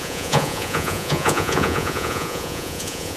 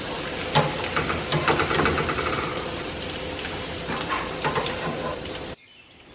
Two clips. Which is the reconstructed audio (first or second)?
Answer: first